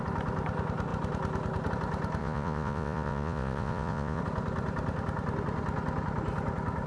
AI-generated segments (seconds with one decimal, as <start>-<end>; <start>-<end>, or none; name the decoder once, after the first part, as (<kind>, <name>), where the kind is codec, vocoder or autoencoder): 2.2-4.2 (vocoder, Vocos)